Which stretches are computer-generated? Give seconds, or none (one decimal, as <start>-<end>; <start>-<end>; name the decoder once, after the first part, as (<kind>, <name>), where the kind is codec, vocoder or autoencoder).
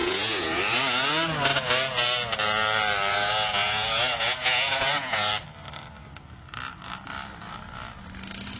0.0-0.6 (vocoder, Vocos); 3.1-5.3